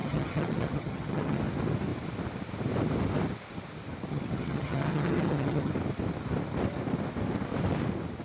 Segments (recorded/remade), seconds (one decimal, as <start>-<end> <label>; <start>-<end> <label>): 0.0-1.4 remade; 1.4-4.1 recorded; 4.1-5.7 remade; 5.7-8.2 recorded